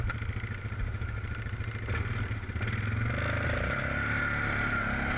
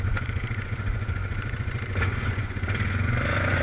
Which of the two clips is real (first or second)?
first